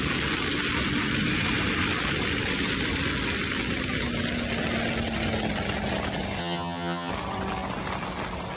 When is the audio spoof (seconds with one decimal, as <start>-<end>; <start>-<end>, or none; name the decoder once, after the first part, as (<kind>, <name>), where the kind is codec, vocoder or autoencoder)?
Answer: 6.4-7.1 (vocoder, HiFi-GAN)